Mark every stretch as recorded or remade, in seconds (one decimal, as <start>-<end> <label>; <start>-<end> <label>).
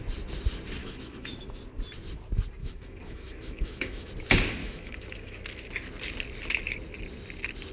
0.0-0.8 recorded; 0.8-1.6 remade; 1.6-2.6 recorded; 2.6-4.1 remade; 4.1-4.6 recorded; 4.6-5.4 remade; 5.4-7.7 recorded